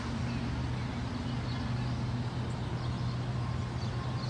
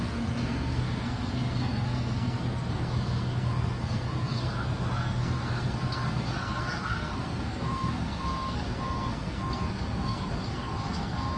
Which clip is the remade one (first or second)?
second